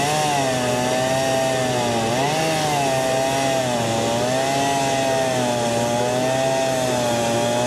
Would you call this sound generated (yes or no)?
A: no